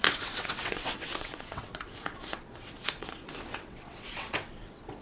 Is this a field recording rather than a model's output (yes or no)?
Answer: no